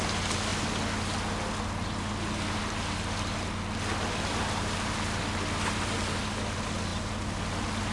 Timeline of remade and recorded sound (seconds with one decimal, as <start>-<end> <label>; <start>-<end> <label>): 0.0-7.9 recorded